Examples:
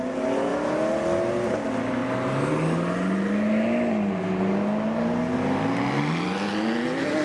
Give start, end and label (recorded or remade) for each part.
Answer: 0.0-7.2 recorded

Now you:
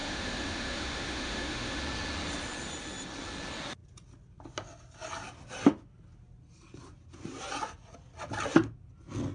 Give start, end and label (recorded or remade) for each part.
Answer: 0.0-1.8 remade; 1.8-9.3 recorded

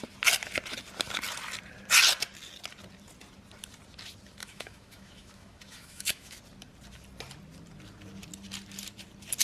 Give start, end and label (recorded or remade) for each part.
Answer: 0.0-4.4 recorded; 4.4-6.4 remade; 6.4-9.4 recorded

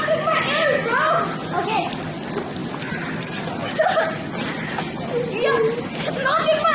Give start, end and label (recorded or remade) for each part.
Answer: 0.0-6.7 recorded

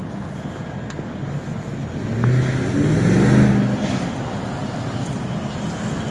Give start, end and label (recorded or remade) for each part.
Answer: 0.0-6.1 recorded

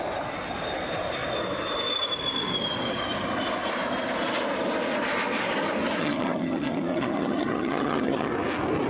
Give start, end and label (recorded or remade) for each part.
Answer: 0.0-6.0 recorded; 6.0-8.3 remade; 8.3-8.9 recorded